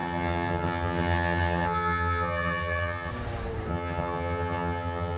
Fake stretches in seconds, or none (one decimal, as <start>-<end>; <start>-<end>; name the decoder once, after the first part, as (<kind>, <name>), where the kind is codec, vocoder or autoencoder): 0.0-3.1 (vocoder, HiFi-GAN); 3.7-5.2

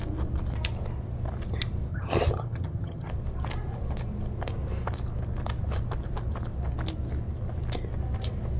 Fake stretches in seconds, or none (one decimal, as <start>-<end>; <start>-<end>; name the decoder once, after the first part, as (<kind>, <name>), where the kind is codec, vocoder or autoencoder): 1.9-3.1 (vocoder, HiFi-GAN)